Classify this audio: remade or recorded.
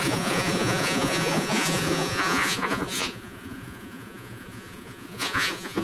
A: remade